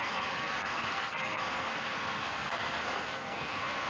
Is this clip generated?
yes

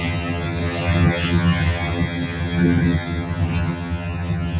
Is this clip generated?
yes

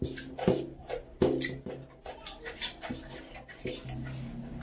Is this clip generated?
no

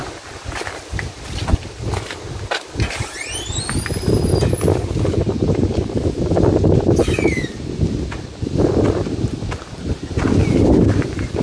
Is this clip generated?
no